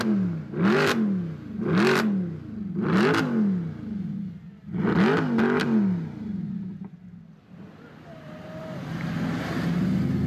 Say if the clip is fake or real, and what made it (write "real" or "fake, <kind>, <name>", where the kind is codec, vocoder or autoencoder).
real